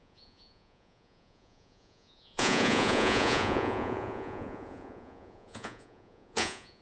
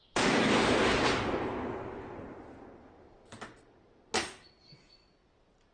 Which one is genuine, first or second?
second